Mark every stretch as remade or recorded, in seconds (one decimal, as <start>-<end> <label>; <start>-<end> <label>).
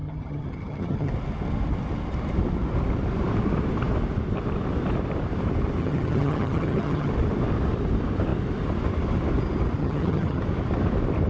0.0-1.1 remade; 1.1-5.8 recorded; 5.8-7.1 remade; 7.1-9.8 recorded; 9.8-10.4 remade; 10.4-11.3 recorded